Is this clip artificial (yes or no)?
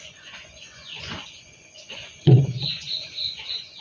yes